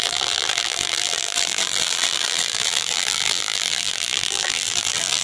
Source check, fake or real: fake